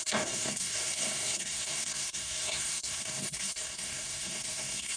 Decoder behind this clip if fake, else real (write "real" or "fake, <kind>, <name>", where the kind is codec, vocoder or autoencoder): fake, codec, SNAC